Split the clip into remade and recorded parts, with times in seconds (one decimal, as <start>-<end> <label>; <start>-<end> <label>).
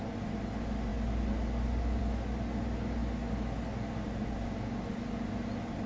0.0-5.9 recorded